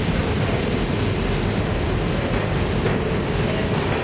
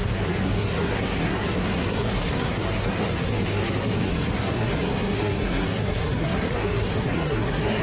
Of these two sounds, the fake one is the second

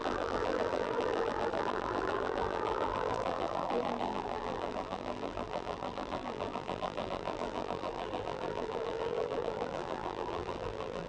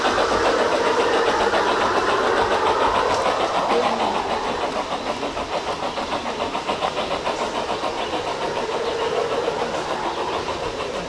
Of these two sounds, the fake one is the first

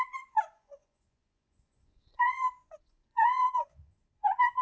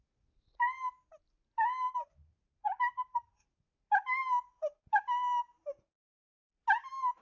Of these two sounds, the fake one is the first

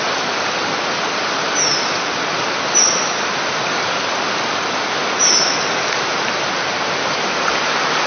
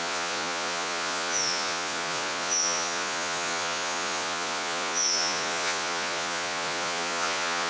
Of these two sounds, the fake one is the second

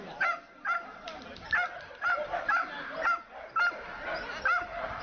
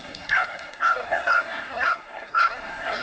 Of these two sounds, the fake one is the second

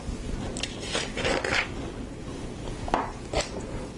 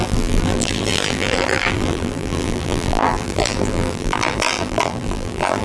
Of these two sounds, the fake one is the second